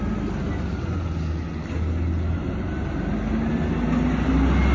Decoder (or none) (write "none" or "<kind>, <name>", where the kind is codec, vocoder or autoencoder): none